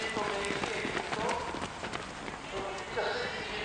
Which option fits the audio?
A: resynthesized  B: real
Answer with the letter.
B